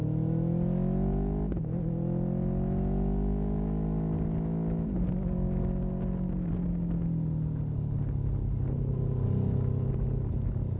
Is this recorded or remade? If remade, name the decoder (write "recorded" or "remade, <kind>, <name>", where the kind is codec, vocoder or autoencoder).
recorded